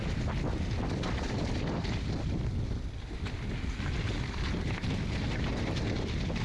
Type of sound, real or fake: real